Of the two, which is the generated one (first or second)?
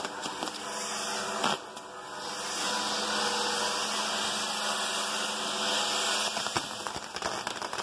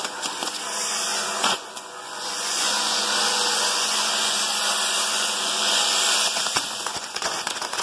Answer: second